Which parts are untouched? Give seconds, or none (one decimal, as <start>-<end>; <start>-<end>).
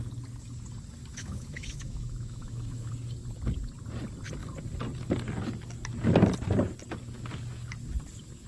0.0-1.1; 2.9-8.5